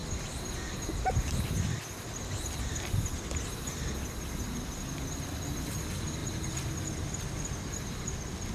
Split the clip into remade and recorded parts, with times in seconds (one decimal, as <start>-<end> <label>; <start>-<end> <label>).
0.0-8.5 recorded